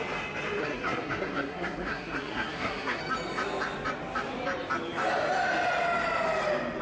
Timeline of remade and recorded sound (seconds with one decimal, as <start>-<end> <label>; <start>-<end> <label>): 0.0-0.6 recorded; 0.6-3.0 remade; 3.0-6.8 recorded